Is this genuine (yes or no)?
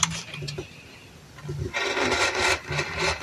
yes